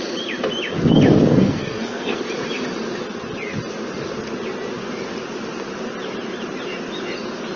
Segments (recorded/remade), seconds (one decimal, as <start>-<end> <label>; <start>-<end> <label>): 0.0-1.3 recorded; 1.3-2.2 remade; 2.2-7.6 recorded